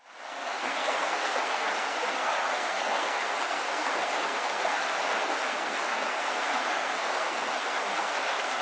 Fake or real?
fake